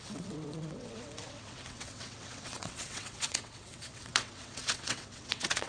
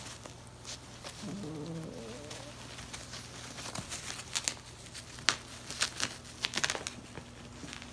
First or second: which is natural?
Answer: second